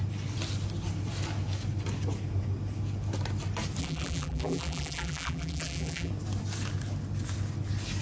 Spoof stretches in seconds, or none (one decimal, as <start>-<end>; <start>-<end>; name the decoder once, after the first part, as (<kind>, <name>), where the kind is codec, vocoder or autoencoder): 3.8-6.1 (vocoder, BigVGAN v2)